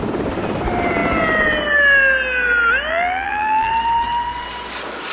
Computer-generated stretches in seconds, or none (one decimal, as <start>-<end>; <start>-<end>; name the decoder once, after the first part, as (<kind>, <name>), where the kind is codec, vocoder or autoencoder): 2.9-3.7 (vocoder, BigVGAN v2)